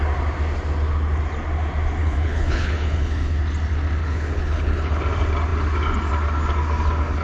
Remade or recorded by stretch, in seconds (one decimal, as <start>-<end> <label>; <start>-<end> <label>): 0.0-2.0 recorded; 2.0-3.4 remade; 3.4-4.0 recorded; 4.0-5.0 remade; 5.0-7.2 recorded